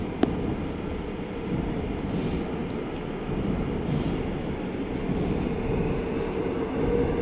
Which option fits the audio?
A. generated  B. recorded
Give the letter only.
B